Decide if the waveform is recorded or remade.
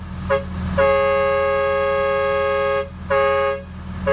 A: recorded